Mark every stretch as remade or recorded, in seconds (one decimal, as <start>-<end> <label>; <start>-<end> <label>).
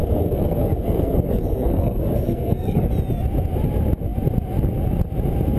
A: 0.0-2.9 remade; 2.9-5.6 recorded